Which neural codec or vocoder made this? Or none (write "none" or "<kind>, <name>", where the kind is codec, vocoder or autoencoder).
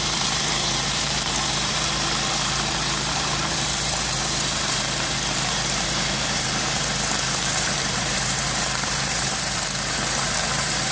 vocoder, BigVGAN v2